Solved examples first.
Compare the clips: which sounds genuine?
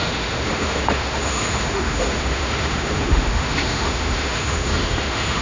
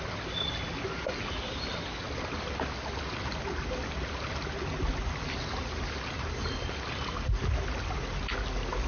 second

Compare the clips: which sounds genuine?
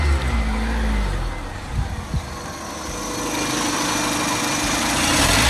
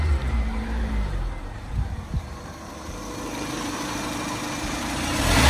first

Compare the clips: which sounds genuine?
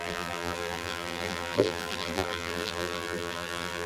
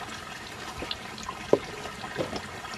second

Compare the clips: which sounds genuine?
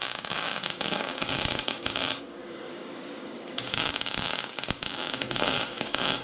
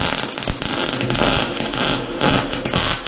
second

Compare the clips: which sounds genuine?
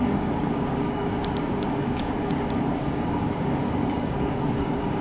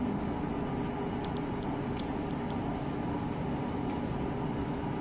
second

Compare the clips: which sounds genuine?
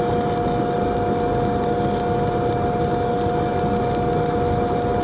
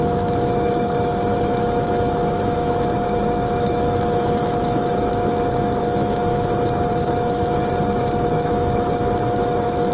first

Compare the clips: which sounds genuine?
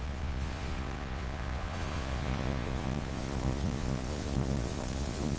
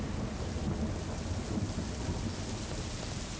second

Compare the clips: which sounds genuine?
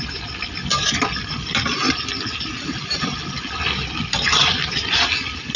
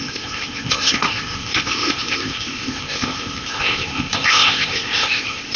first